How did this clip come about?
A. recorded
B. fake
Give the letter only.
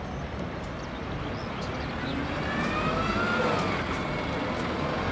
A